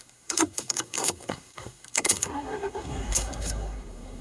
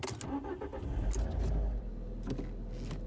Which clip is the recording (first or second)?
second